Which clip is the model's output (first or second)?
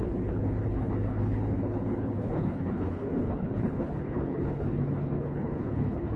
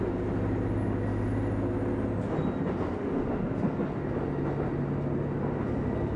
first